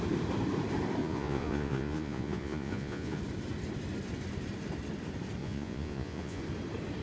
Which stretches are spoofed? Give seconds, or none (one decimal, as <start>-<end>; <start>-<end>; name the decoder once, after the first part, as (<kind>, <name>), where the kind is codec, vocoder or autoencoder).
1.0-3.2 (vocoder, Vocos); 5.4-6.4